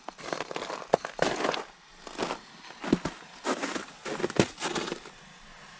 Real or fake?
real